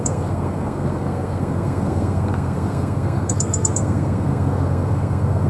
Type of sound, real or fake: fake